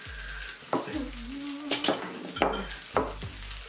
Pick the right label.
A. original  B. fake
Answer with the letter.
A